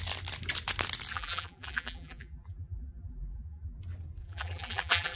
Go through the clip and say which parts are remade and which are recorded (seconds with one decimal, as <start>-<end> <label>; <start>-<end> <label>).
0.0-1.1 recorded; 1.1-3.8 remade; 3.8-4.2 recorded; 4.2-5.2 remade